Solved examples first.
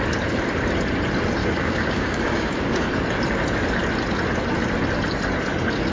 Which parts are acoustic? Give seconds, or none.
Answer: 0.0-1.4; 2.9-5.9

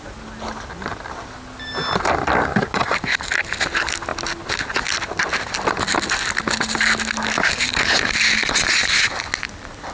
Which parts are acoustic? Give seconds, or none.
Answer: 0.0-9.9

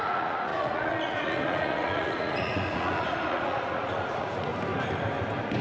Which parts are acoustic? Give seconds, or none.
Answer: 4.5-5.6

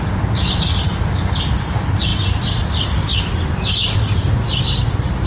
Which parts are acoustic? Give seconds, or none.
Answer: 0.7-1.5; 2.1-3.9

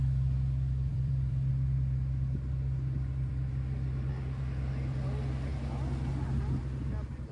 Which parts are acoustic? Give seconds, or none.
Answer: 0.0-0.9; 1.5-7.3

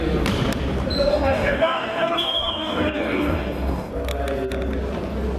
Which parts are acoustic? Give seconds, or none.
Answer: 0.0-1.1; 3.9-5.4